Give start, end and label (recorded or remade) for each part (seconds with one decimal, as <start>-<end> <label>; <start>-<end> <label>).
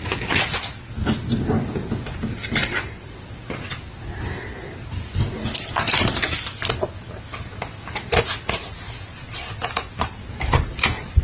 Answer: 0.0-2.4 recorded; 2.4-3.1 remade; 3.1-9.6 recorded; 9.6-11.2 remade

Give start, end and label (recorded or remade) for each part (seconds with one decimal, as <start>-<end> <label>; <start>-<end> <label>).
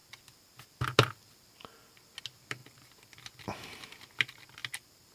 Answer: 0.0-5.1 recorded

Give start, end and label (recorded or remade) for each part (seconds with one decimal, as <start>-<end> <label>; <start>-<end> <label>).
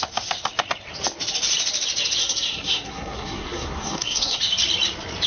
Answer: 0.0-2.2 recorded; 2.2-4.4 remade; 4.4-5.3 recorded